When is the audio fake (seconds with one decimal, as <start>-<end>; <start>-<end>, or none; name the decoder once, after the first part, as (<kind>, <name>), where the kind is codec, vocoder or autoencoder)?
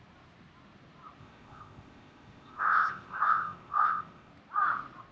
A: 1.2-4.3 (codec, ZipCodec)